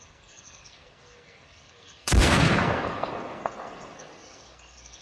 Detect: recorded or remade remade